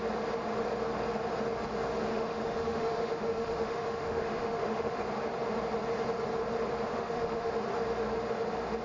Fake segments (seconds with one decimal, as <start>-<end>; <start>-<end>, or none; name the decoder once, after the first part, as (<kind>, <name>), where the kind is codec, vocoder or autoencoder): 2.1-5.0 (autoencoder, DAC-VAE); 6.9-7.5

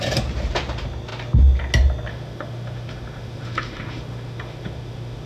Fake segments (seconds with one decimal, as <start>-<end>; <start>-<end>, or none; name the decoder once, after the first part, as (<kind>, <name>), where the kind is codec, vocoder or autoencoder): 2.1-5.3 (autoencoder, DAC-VAE)

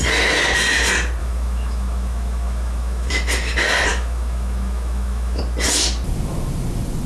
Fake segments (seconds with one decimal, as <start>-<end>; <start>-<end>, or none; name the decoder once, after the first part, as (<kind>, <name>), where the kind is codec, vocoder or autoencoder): 1.2-3.1 (autoencoder, DAC-VAE); 3.9-5.4

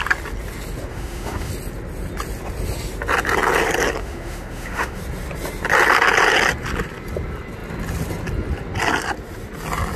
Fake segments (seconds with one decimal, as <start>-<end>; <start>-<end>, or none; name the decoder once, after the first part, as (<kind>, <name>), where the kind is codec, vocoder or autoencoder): 0.9-1.5 (autoencoder, DAC-VAE); 4.0-5.0

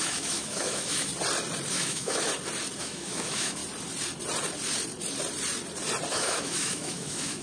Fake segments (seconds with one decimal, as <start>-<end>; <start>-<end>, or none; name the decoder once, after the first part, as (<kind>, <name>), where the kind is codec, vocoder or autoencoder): 0.0-1.1 (autoencoder, DAC-VAE); 1.7-2.3; 2.8-3.6; 6.1-7.4

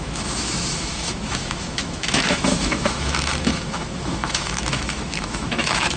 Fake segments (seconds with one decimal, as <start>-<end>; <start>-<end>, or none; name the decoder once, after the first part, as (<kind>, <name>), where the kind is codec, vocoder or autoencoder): 0.0-6.0 (autoencoder, DAC-VAE)

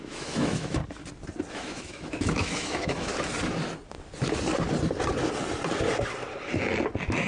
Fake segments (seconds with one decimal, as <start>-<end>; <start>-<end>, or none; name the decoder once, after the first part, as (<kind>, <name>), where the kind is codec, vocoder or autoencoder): 0.0-0.8 (autoencoder, DAC-VAE); 1.5-3.1

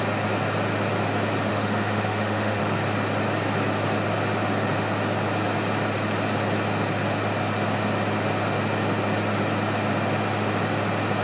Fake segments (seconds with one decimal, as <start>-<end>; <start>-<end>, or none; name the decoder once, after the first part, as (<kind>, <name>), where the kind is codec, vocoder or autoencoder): 1.5-2.6 (autoencoder, DAC-VAE)